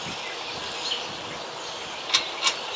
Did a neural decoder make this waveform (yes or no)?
no